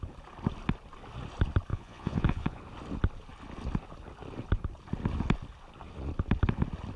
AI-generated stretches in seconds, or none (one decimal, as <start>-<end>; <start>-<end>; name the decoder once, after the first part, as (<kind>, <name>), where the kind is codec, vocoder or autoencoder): 1.7-2.6 (vocoder, Vocos)